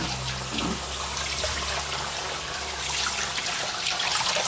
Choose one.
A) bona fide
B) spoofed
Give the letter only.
A